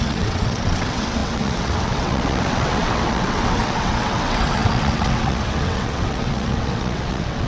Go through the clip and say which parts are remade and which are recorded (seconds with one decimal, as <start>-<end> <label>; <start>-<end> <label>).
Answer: 0.0-7.5 remade